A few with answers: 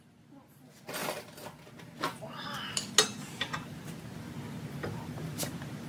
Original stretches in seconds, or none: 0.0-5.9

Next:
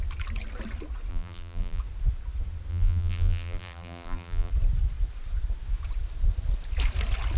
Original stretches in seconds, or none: 0.0-1.1; 1.8-2.7; 4.5-7.4

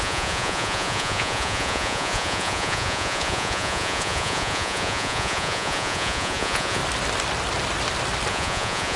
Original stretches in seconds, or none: 6.8-8.3